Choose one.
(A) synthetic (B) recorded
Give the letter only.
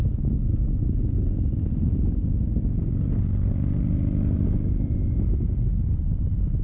B